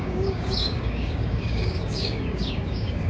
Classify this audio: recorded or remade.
remade